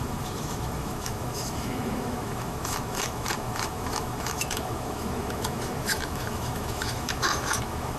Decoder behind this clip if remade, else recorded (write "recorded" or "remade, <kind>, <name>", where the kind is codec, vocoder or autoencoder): remade, autoencoder, DAC-VAE